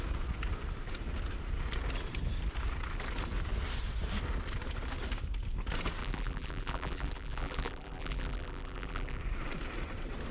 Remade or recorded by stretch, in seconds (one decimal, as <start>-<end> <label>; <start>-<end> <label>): 0.0-6.0 recorded; 6.0-9.2 remade; 9.2-10.3 recorded